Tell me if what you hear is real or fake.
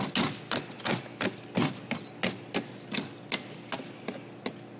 real